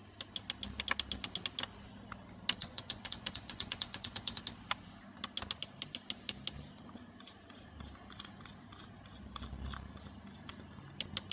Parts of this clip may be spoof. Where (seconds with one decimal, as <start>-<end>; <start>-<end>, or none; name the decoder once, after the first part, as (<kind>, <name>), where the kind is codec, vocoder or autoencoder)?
2.6-4.4 (vocoder, Vocos)